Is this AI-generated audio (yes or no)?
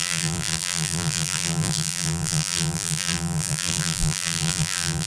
yes